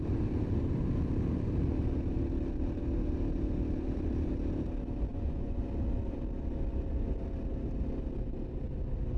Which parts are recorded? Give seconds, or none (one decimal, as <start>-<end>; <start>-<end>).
0.0-5.1; 5.6-9.2